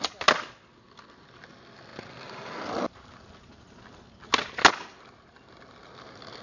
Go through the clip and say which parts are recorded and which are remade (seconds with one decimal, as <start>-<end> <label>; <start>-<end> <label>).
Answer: 0.0-6.4 recorded